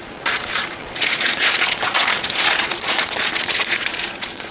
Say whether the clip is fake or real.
fake